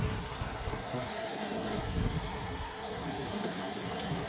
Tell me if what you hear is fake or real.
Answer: fake